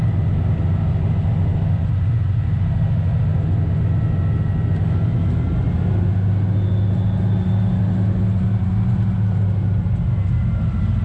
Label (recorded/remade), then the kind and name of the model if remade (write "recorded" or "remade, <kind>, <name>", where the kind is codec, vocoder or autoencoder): recorded